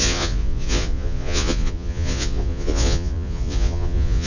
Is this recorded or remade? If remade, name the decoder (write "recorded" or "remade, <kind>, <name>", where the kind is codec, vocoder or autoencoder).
remade, vocoder, Vocos